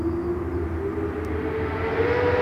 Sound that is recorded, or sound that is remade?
recorded